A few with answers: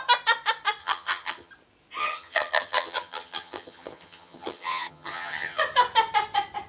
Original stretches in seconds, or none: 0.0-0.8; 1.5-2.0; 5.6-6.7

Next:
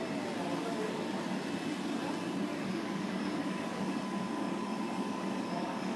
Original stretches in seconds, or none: 0.0-0.6; 1.1-2.5